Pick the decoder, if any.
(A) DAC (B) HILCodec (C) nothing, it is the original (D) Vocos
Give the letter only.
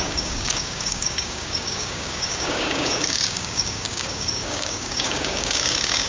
A